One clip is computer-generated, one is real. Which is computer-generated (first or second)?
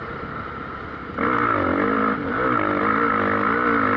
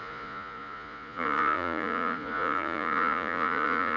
second